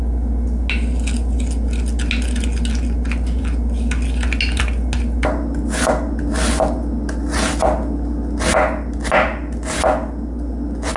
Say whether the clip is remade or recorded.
recorded